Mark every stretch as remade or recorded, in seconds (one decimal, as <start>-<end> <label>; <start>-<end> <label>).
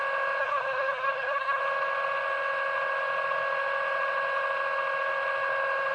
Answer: 0.0-0.4 recorded; 0.4-1.6 remade; 1.6-5.9 recorded